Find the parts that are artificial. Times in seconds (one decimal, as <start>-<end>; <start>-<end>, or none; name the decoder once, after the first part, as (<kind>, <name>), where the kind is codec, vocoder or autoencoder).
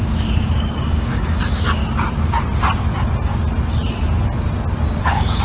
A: 0.0-1.8 (codec, DAC); 5.0-5.4